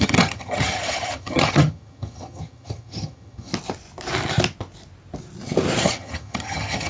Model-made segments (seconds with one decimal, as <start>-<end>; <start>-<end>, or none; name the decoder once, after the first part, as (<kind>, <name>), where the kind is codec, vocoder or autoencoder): 0.0-3.5 (vocoder, HiFi-GAN); 5.8-6.9